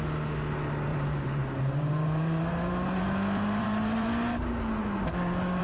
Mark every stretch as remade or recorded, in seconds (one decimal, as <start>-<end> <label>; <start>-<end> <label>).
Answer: 0.0-0.9 recorded; 0.9-4.3 remade; 4.3-5.6 recorded